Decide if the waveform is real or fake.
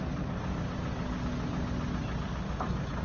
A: real